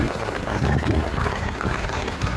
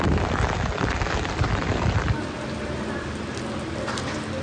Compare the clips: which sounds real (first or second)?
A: second